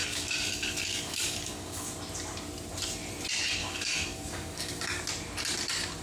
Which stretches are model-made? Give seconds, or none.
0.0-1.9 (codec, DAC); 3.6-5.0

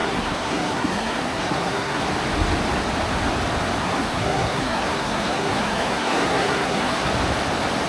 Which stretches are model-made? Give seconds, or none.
0.0-2.0 (codec, SNAC); 3.8-7.1

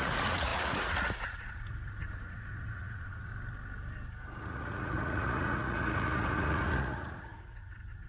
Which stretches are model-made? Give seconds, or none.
0.0-3.3 (vocoder, Vocos); 4.4-8.1

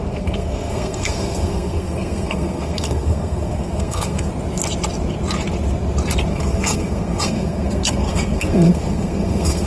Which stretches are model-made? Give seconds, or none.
0.0-4.3 (codec, SNAC); 6.3-9.7

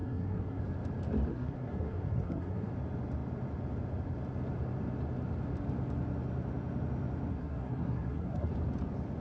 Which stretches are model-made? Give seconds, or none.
0.0-0.6 (codec, SNAC); 1.3-2.7; 7.3-8.5